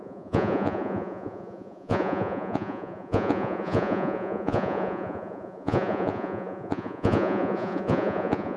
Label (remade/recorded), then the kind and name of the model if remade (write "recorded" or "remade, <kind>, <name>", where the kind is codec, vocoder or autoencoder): remade, vocoder, Vocos